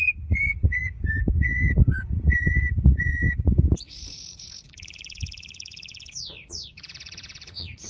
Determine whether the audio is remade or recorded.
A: remade